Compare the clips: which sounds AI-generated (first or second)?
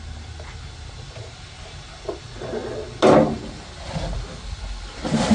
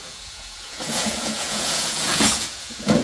second